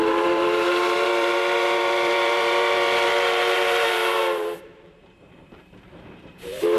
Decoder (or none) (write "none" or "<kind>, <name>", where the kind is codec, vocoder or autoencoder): vocoder, BigVGAN v2